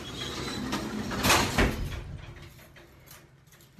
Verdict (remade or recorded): recorded